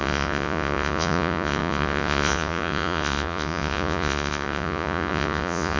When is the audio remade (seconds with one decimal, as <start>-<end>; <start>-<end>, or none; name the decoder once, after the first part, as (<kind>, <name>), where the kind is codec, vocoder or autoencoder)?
0.0-5.8 (vocoder, Vocos)